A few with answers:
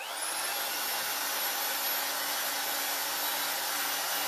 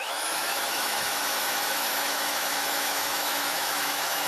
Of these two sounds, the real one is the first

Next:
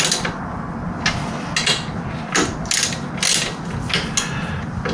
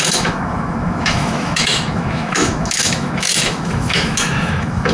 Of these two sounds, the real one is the first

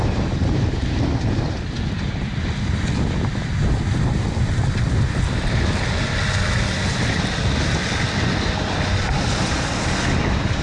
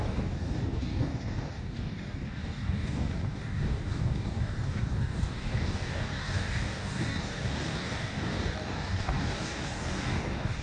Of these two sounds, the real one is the first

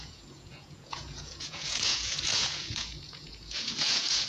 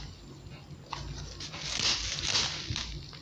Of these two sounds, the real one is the second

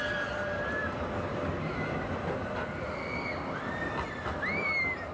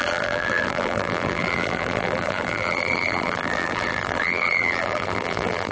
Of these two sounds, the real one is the first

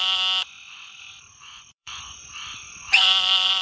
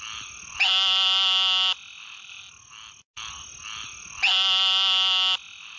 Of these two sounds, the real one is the second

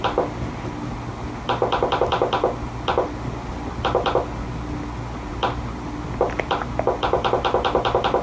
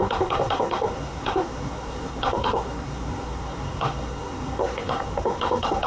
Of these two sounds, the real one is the first